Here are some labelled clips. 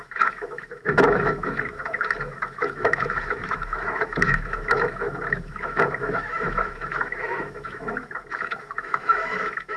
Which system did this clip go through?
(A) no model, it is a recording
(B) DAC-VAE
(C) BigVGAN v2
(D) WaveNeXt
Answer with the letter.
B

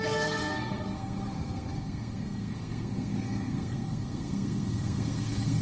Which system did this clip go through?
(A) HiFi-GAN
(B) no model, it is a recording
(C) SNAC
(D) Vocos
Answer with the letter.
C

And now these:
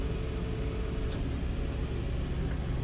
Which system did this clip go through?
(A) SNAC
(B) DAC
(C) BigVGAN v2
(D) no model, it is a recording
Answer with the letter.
D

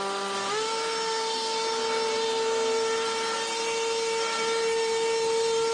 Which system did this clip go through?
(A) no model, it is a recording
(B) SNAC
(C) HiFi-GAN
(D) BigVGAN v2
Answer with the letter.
A